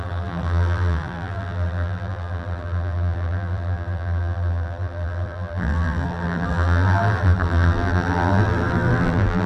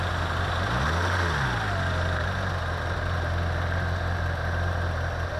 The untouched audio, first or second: second